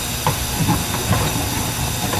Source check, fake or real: real